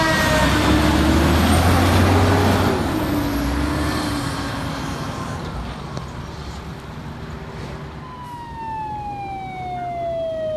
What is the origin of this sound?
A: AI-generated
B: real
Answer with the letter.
B